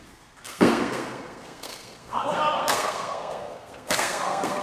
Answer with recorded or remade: remade